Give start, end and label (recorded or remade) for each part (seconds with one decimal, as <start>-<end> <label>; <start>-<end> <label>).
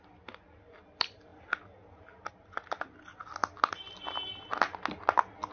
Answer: 0.0-5.5 recorded